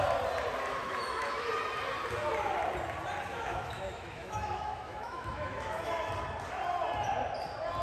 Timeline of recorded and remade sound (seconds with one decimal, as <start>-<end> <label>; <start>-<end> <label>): 0.0-0.8 recorded; 0.8-1.5 remade; 1.5-3.3 recorded; 3.3-6.1 remade; 6.1-7.8 recorded